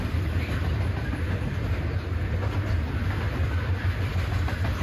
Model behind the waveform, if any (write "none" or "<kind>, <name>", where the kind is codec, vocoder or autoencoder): none